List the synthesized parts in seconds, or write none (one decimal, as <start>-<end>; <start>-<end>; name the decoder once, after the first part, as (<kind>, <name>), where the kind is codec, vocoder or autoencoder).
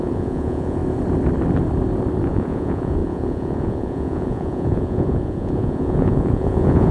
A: 0.0-0.8 (vocoder, Vocos); 2.2-6.9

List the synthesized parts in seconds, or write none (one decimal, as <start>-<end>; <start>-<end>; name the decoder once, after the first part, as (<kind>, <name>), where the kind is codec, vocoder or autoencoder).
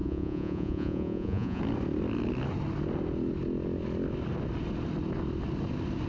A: 0.0-1.6 (vocoder, Vocos)